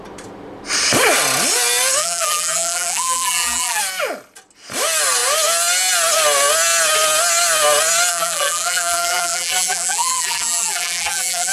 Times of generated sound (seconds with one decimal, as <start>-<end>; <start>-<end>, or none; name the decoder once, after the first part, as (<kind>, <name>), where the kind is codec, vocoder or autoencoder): 2.0-3.8 (vocoder, BigVGAN v2); 8.1-11.5